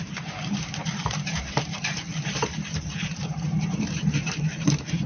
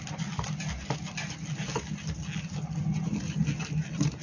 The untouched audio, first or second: second